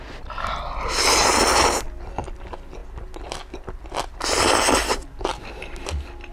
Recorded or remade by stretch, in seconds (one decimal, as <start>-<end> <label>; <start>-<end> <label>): 0.0-6.3 recorded